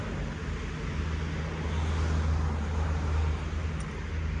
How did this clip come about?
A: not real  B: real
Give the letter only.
B